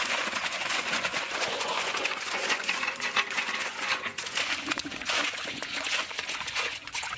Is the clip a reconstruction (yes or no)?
yes